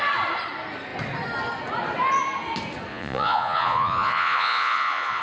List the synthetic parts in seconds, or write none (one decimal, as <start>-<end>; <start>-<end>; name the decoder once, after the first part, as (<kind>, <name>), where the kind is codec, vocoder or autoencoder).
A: 2.9-5.2 (vocoder, Vocos)